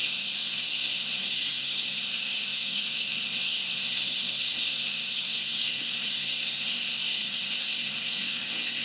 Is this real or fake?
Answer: fake